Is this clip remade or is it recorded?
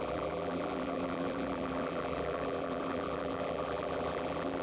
remade